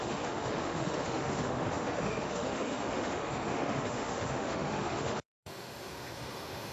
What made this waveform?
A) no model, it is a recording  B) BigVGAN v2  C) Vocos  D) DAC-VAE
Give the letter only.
D